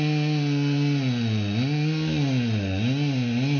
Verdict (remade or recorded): recorded